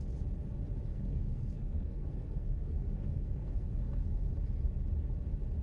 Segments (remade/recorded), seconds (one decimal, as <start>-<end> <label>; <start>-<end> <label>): 0.0-0.9 recorded; 0.9-4.3 remade; 4.3-5.6 recorded